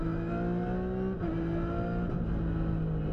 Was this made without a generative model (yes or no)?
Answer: yes